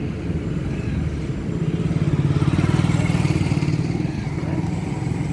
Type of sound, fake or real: real